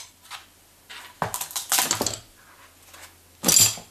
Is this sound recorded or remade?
recorded